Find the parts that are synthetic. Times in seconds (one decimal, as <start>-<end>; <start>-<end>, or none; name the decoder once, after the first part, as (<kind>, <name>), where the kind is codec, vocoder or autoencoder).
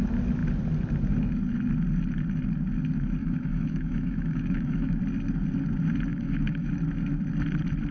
3.2-5.0 (autoencoder, DAC-VAE); 6.1-6.7